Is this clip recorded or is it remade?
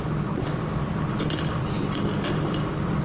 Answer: recorded